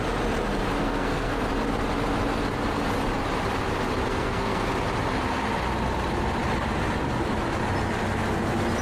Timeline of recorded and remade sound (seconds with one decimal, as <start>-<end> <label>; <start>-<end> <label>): 0.0-0.8 recorded; 0.8-1.4 remade; 1.4-4.1 recorded; 4.1-4.7 remade; 4.7-8.8 recorded